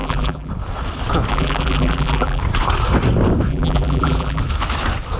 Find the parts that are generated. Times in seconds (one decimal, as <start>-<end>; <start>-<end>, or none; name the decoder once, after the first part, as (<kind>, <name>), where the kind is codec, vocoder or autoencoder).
0.0-0.5 (vocoder, BigVGAN v2); 1.3-2.4; 3.5-4.4

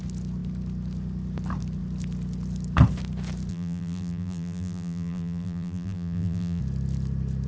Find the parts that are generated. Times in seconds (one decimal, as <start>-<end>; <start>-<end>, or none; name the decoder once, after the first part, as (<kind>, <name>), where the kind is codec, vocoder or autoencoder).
3.5-6.6 (vocoder, BigVGAN v2)

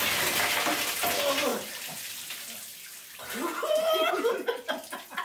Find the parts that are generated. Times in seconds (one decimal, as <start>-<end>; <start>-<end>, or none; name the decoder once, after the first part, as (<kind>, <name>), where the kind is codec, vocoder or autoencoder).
none